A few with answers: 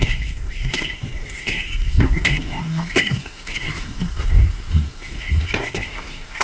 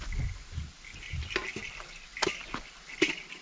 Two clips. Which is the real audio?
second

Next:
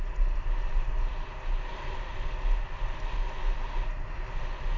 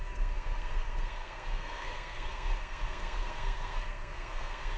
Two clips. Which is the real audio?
first